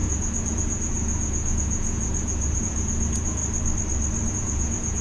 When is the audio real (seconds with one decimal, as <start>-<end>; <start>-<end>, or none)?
3.4-4.3